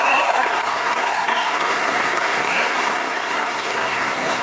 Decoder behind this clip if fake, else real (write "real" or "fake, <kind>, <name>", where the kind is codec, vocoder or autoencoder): fake, codec, SNAC